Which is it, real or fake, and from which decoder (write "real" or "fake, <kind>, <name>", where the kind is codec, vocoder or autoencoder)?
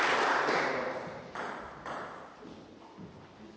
real